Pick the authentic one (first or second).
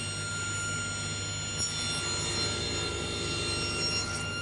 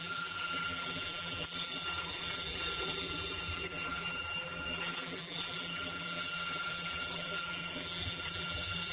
first